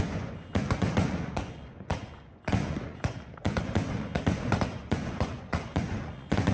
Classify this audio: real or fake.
fake